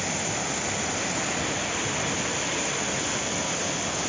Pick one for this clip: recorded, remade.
recorded